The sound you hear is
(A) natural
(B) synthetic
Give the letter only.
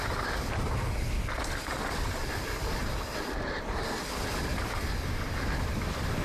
A